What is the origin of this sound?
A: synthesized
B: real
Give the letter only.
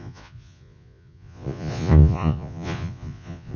A